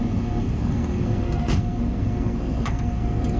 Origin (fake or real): fake